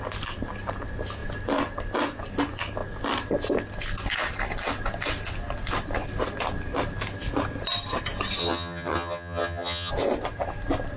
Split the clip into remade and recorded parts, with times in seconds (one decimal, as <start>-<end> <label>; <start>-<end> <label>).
0.0-8.4 recorded; 8.4-9.9 remade; 9.9-11.0 recorded